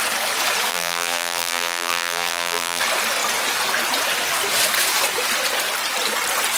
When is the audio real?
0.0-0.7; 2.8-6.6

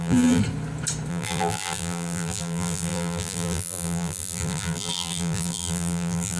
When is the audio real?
0.4-1.1

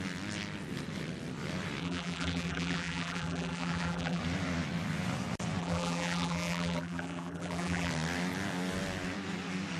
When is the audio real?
0.0-1.8; 4.2-5.6; 7.9-9.8